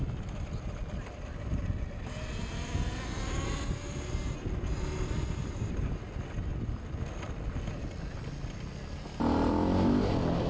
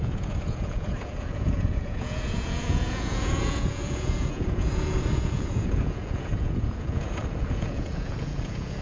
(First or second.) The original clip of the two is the first